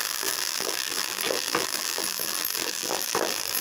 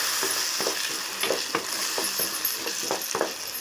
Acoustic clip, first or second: second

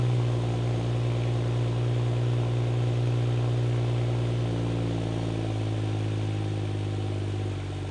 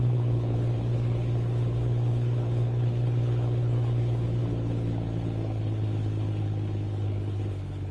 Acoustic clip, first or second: first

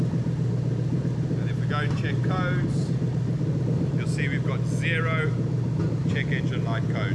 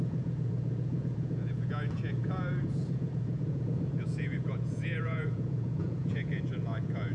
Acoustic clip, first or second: first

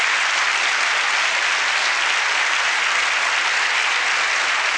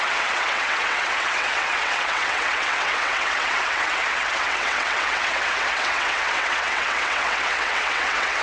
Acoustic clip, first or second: first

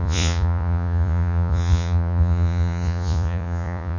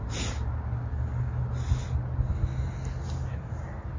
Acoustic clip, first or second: second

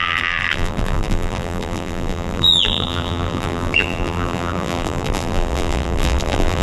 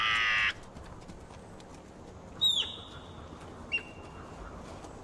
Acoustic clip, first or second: second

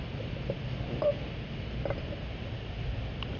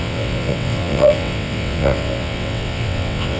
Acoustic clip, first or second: first